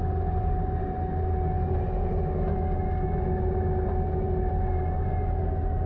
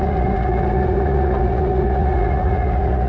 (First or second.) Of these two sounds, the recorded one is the first